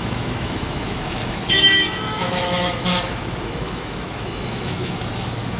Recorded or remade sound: remade